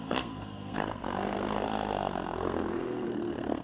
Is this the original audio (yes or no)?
no